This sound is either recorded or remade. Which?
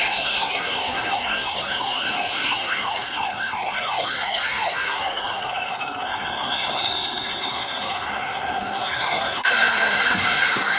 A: remade